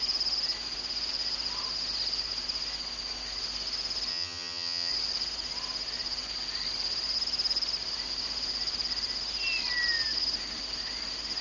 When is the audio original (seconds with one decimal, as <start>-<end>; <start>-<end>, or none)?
0.0-4.1; 4.9-11.4